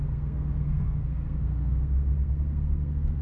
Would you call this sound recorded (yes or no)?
no